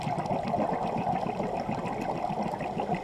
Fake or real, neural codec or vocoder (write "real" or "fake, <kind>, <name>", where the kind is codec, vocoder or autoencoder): real